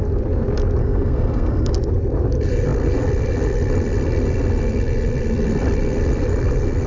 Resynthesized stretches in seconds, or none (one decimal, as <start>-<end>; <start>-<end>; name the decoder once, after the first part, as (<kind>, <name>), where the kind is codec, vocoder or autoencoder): 0.8-1.7 (codec, SNAC)